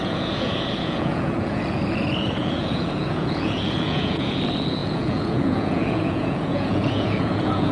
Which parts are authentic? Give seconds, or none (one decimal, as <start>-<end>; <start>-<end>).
none